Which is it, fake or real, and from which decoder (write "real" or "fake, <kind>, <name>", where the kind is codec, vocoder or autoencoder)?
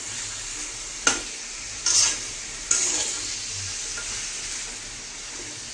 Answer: real